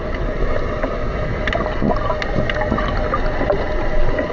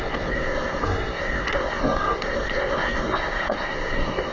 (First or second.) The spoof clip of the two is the second